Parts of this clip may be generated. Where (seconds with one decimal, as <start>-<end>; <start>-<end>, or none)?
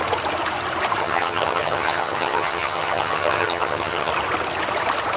1.0-4.1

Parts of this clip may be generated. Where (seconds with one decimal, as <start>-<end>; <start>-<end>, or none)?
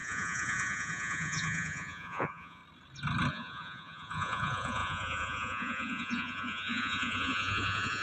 0.0-2.6; 3.3-8.0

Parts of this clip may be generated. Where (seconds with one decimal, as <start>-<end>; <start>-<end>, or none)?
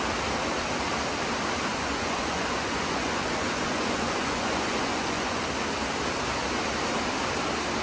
1.7-5.4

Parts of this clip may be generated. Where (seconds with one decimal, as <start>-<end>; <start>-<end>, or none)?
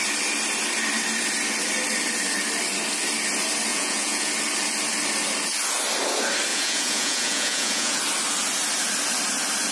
3.7-4.3; 6.5-8.0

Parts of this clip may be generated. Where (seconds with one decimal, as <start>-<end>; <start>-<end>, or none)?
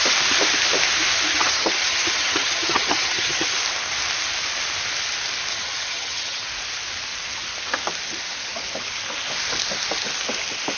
1.3-3.5; 5.5-6.5